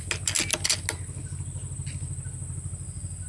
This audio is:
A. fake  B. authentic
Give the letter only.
B